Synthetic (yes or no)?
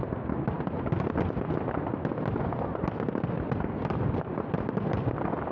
no